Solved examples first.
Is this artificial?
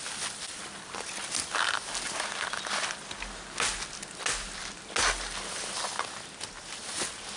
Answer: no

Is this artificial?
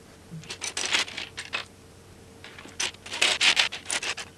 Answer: no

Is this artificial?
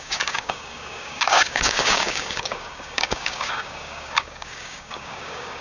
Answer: yes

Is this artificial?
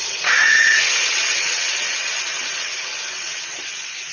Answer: yes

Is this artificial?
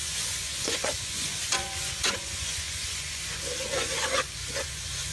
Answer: yes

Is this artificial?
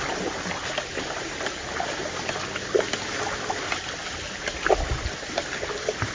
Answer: no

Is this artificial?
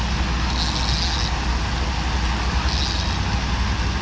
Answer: no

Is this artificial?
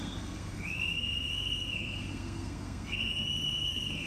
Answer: yes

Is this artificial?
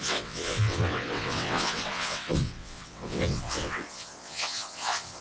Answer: yes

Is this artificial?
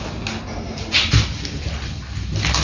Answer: no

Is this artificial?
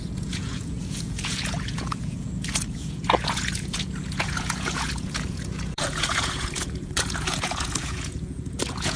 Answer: yes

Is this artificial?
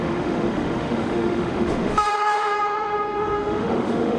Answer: yes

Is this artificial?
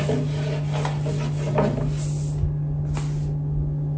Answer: no